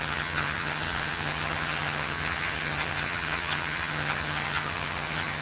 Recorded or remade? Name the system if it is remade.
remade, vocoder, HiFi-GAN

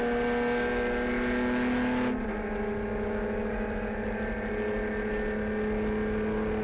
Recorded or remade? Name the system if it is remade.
recorded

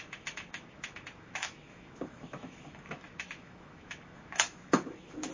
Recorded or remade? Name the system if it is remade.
remade, autoencoder, DAC-VAE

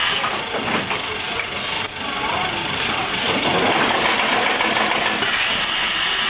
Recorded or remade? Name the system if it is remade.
recorded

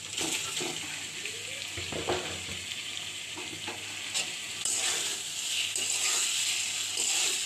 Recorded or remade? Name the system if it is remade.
recorded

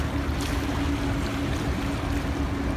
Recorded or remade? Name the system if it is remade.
recorded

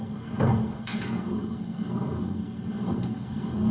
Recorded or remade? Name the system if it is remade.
remade, codec, SNAC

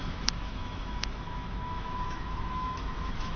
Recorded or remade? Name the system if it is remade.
remade, autoencoder, DAC-VAE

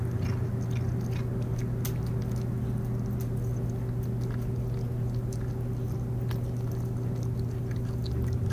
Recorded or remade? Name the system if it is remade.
recorded